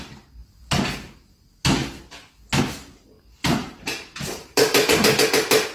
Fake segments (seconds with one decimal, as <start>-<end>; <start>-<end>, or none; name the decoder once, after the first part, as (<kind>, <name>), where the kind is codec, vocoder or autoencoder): 3.6-4.9 (vocoder, BigVGAN v2)